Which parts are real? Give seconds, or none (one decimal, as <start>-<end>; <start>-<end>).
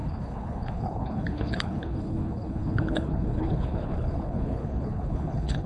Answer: none